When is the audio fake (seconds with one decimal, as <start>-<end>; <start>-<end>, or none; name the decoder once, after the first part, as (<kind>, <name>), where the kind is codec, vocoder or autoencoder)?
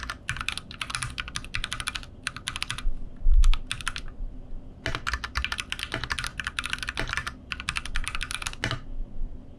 none